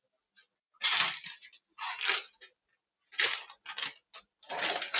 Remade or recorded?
recorded